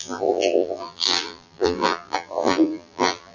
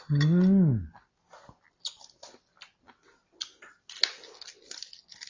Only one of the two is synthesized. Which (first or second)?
first